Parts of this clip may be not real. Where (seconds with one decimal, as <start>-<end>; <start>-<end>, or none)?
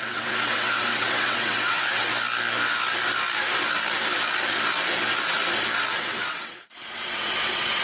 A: 0.0-2.1; 5.9-7.8